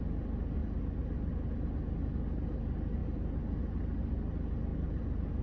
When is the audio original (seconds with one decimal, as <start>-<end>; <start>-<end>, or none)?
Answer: 0.0-5.4